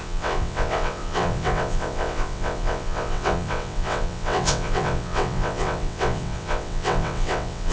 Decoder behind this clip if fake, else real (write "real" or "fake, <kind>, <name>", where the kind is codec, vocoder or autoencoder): fake, vocoder, WaveNeXt